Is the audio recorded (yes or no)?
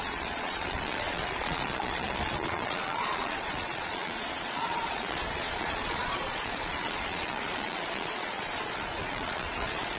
no